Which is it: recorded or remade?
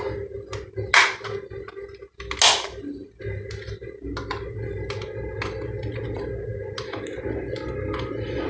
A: recorded